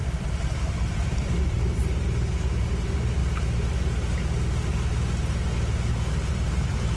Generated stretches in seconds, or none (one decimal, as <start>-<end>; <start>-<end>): 0.0-1.8; 2.6-3.2; 6.3-7.0